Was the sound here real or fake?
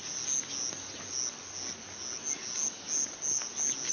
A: real